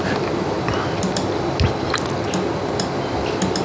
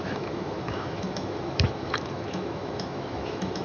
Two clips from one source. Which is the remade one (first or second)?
second